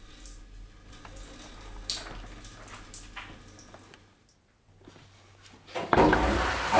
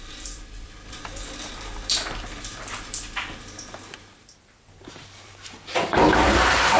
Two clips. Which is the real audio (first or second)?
first